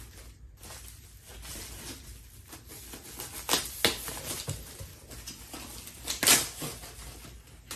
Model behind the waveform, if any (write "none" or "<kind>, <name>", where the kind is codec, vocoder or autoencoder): none